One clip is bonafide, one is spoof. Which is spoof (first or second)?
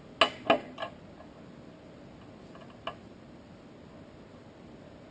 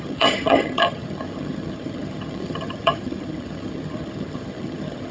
second